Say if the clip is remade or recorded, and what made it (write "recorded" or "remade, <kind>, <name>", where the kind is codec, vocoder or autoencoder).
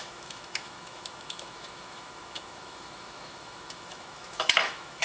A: remade, autoencoder, DAC-VAE